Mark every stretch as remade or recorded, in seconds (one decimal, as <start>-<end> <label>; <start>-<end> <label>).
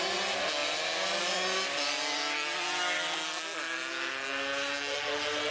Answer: 0.0-5.5 recorded